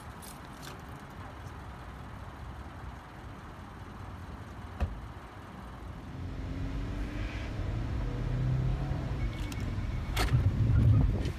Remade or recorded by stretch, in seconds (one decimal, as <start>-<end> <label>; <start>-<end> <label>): 0.0-8.7 recorded; 8.7-11.4 remade

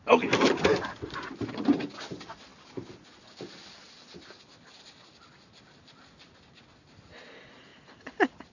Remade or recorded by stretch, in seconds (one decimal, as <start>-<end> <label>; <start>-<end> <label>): 0.0-8.5 recorded

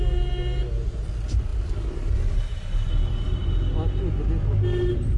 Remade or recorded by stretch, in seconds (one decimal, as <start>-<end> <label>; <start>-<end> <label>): 0.0-5.2 recorded

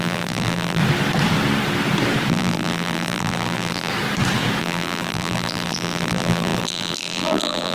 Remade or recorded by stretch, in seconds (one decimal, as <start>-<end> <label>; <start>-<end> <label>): 0.0-0.8 remade; 0.8-2.3 recorded; 2.3-3.9 remade; 3.9-4.6 recorded; 4.6-7.7 remade

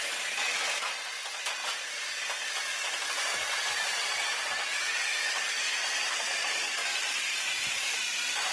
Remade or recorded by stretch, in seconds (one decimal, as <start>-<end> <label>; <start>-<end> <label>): 0.0-1.6 recorded; 1.6-4.5 remade; 4.5-8.5 recorded

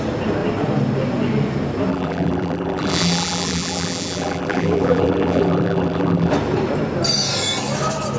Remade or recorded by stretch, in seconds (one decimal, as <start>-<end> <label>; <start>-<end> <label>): 0.0-1.9 recorded; 1.9-6.3 remade; 6.3-8.2 recorded

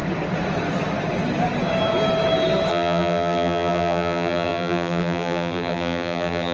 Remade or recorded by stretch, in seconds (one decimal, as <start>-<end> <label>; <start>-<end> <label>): 0.0-2.7 recorded; 2.7-6.5 remade